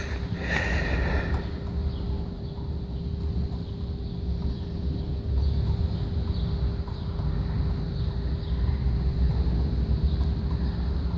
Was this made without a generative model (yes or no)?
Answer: yes